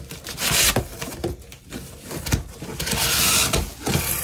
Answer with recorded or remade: recorded